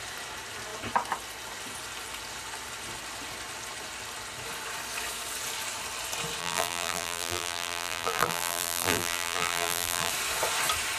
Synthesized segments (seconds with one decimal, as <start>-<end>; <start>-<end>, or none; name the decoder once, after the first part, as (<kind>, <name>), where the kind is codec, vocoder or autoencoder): 6.4-10.1 (vocoder, BigVGAN v2)